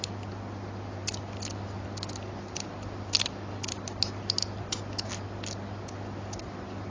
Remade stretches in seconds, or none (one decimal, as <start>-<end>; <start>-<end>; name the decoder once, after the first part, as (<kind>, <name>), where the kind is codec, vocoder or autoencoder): none